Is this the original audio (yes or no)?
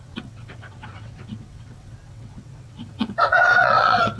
no